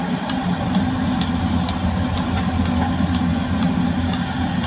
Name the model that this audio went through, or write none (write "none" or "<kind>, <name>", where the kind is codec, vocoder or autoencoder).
none